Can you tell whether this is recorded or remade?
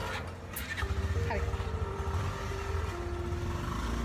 recorded